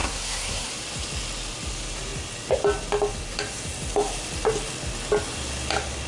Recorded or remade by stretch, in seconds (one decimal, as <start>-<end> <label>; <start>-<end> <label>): 0.0-0.7 remade; 0.7-6.1 recorded